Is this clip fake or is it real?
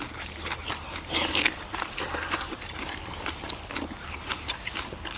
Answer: fake